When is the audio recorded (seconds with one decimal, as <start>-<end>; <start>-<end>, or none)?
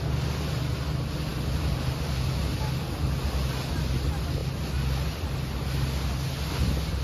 0.0-7.0